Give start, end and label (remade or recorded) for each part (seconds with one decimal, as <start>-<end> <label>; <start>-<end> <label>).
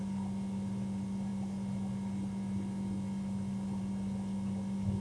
0.0-5.0 recorded